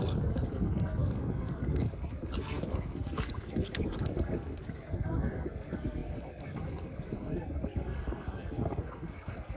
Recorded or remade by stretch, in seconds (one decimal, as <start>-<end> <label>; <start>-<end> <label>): 0.0-9.6 remade